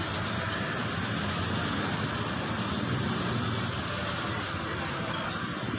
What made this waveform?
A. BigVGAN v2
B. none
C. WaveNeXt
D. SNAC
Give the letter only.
B